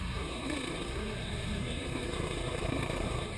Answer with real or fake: fake